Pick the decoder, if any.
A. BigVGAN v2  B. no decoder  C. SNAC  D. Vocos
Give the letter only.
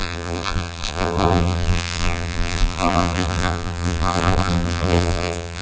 A